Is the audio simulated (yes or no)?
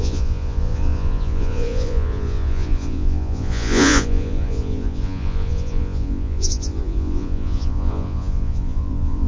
yes